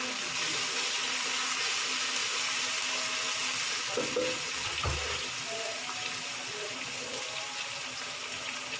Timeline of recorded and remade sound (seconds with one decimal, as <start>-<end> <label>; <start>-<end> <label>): 0.0-8.8 recorded